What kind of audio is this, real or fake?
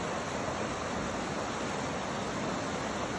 real